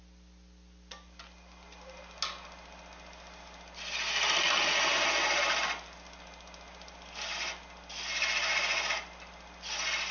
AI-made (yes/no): no